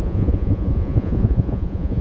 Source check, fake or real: fake